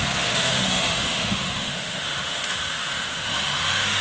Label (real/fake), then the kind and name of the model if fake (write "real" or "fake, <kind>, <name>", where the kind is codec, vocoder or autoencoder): fake, autoencoder, DAC-VAE